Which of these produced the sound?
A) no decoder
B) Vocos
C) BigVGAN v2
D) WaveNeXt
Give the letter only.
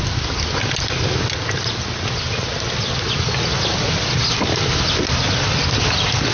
A